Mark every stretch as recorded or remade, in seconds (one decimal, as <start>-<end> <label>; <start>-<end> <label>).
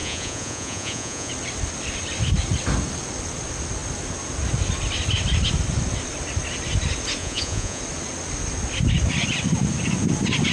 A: 0.0-1.3 remade; 1.3-7.2 recorded; 7.2-7.8 remade; 7.8-10.5 recorded